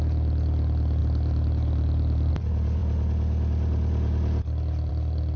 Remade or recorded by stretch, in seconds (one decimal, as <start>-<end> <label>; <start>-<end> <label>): 0.0-1.0 recorded; 1.0-2.3 remade; 2.3-5.4 recorded